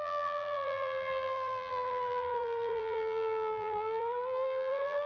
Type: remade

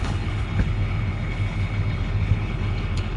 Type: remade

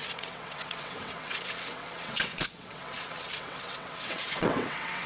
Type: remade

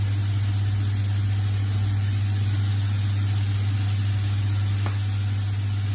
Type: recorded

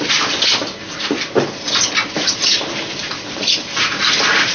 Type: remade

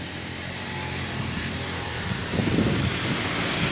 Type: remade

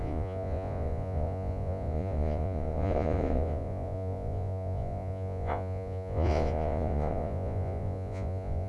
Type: remade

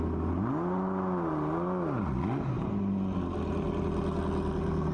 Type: recorded